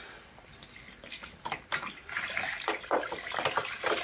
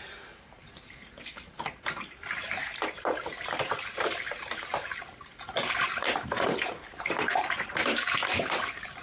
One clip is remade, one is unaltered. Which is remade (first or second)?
second